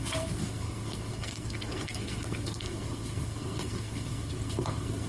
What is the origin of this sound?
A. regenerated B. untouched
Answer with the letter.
A